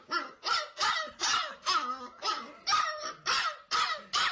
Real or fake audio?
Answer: real